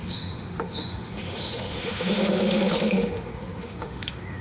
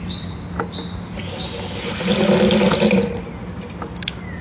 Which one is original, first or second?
second